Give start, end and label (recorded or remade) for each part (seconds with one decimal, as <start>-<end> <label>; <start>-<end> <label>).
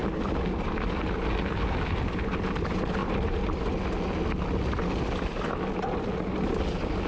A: 0.0-7.1 recorded